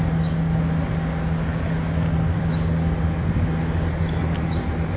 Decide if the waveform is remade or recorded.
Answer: recorded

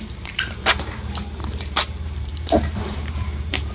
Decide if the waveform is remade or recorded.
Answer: remade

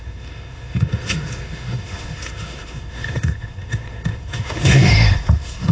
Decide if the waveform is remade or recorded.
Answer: remade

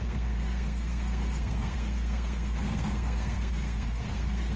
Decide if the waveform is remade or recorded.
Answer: remade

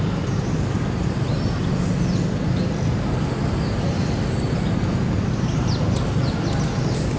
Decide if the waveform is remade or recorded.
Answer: recorded